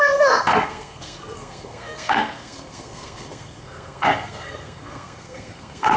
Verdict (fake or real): fake